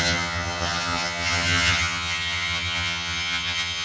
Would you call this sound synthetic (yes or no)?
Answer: yes